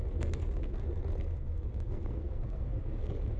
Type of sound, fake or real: fake